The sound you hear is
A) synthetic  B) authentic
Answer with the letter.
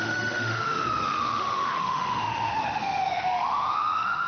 A